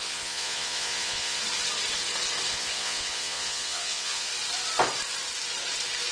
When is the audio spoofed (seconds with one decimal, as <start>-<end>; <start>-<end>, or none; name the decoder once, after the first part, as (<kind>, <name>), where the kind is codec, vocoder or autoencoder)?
0.0-1.4 (vocoder, Vocos); 2.5-4.3